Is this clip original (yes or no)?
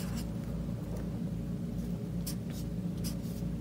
yes